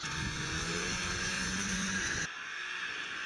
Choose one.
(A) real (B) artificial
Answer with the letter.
B